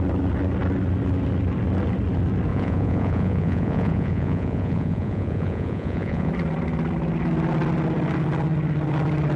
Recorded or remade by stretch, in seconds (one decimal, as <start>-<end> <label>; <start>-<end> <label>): 0.0-2.5 recorded; 2.5-6.3 remade; 6.3-9.4 recorded

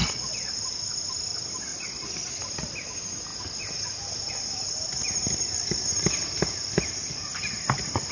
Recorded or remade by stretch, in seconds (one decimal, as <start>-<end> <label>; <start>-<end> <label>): 0.0-0.5 remade; 0.5-1.7 recorded; 1.7-2.3 remade; 2.3-8.1 recorded

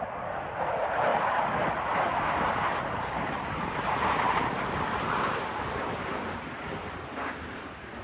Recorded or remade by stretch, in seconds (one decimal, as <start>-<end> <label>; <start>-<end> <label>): 0.0-8.0 recorded

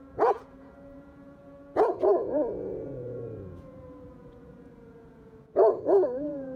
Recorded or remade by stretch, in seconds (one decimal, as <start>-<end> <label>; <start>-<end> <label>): 0.0-6.6 remade